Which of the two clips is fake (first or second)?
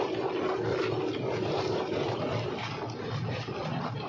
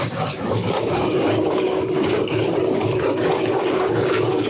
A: second